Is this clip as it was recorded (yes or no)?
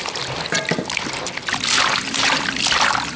yes